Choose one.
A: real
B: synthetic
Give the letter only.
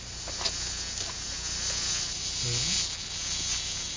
A